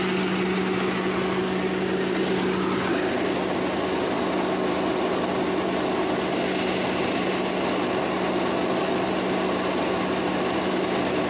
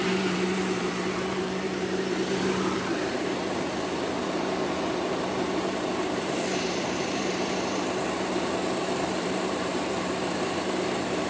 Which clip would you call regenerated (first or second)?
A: second